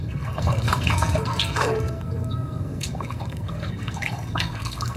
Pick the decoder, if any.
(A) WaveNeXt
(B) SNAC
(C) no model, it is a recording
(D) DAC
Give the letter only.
B